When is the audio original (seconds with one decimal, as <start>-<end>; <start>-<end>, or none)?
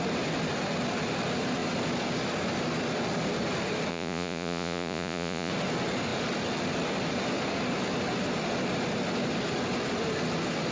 0.0-3.9; 5.5-10.7